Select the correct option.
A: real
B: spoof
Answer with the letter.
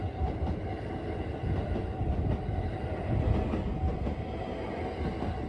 A